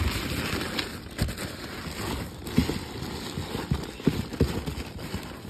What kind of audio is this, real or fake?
real